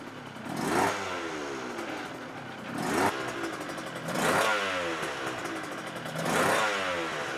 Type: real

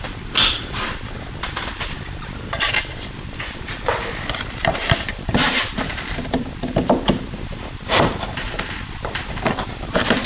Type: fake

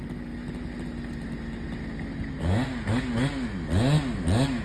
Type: real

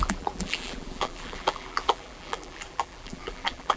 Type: fake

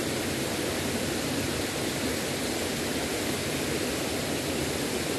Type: real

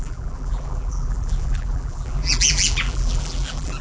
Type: fake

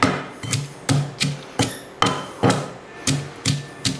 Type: real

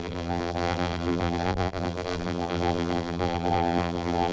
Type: fake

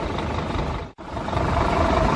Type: fake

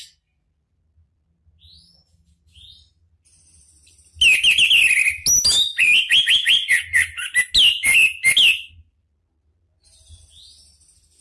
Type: real